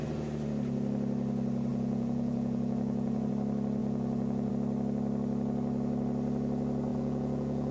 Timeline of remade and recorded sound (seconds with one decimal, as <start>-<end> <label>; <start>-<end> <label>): 0.0-1.7 recorded; 1.7-3.3 remade; 3.3-3.8 recorded; 3.8-4.5 remade; 4.5-6.9 recorded; 6.9-7.7 remade